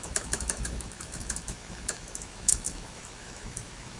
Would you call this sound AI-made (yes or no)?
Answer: yes